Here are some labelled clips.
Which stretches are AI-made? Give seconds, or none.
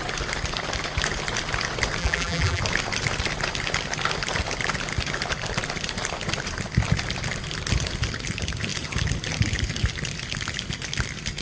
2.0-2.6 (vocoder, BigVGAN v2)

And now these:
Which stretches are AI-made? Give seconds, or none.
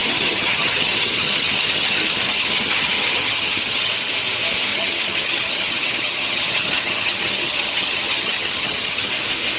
0.0-3.9 (vocoder, HiFi-GAN); 4.7-9.1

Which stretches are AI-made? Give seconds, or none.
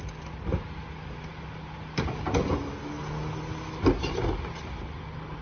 none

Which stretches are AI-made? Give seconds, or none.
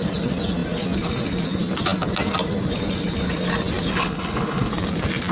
3.9-4.7 (codec, HILCodec)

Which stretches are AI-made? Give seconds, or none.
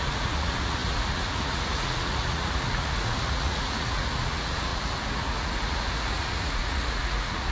0.0-7.5 (vocoder, Vocos)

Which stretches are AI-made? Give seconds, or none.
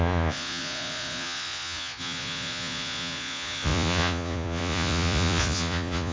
0.0-6.1 (vocoder, Vocos)